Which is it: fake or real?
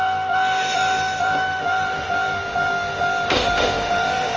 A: fake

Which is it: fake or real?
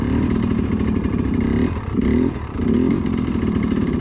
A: real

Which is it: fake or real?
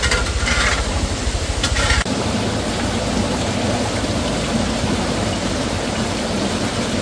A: real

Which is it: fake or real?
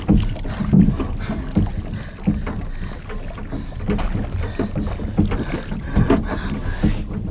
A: real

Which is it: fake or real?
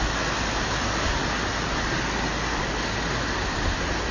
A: real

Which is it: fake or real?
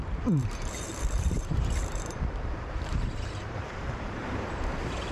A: fake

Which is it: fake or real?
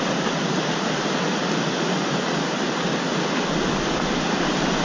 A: real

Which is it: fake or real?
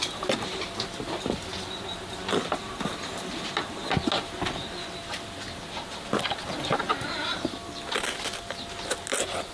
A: real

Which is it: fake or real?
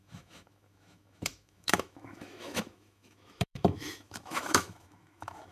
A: fake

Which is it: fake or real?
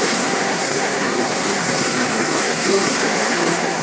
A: fake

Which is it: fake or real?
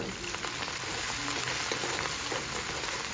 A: real